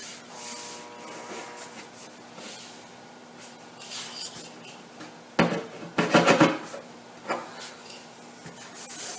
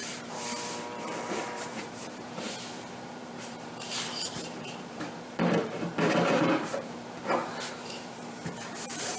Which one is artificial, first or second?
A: second